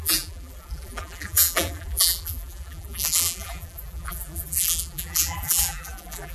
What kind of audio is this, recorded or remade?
remade